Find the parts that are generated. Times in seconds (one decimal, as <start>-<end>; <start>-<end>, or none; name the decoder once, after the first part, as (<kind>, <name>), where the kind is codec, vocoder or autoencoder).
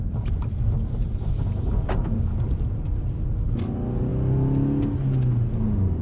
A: none